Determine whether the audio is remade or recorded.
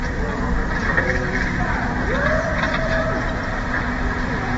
remade